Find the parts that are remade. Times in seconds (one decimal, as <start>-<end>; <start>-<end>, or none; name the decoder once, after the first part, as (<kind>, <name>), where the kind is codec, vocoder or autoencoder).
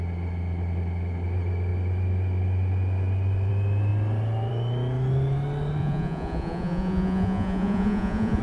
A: 5.8-8.4 (vocoder, Vocos)